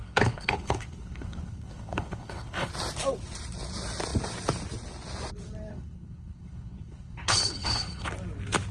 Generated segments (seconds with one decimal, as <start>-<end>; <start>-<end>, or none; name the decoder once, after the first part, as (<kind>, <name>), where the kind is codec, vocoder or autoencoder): 0.0-2.7 (codec, HILCodec); 5.7-8.1